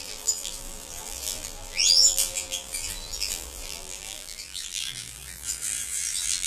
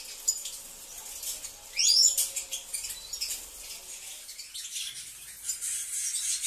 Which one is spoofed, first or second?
first